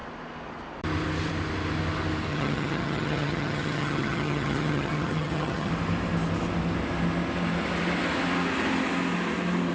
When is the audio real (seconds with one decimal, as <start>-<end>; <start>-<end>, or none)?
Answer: 0.0-2.3; 5.7-9.7